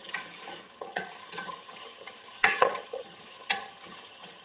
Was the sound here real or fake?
fake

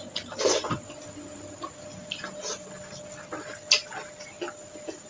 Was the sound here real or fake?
real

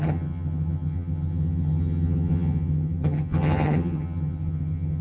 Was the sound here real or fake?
fake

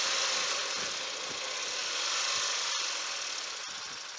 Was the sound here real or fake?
real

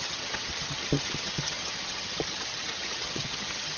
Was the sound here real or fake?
fake